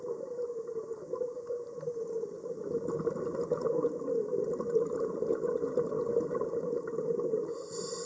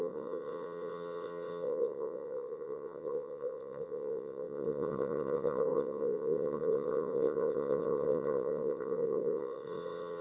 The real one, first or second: first